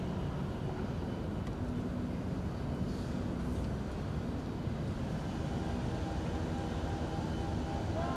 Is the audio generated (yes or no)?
no